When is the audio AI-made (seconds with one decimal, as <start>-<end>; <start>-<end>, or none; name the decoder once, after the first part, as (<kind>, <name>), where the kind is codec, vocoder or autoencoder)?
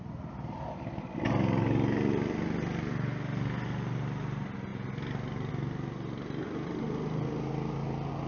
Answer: none